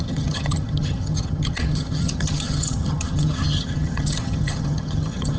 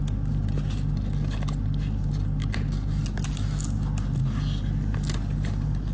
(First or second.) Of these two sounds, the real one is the second